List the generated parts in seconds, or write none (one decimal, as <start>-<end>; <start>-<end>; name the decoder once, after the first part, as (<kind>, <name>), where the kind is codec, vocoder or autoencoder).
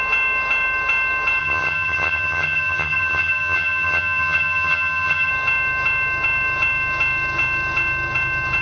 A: 1.4-5.3 (vocoder, HiFi-GAN)